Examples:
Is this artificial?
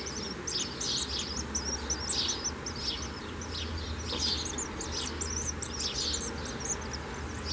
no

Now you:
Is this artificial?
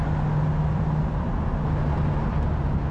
no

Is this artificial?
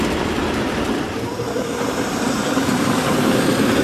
yes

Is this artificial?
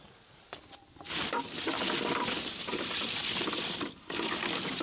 no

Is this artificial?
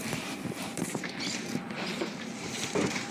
yes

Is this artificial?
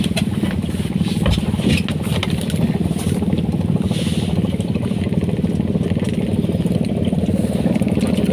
no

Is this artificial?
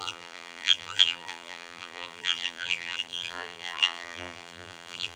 yes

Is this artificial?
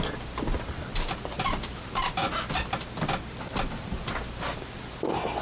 no